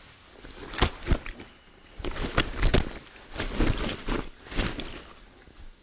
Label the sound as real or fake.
real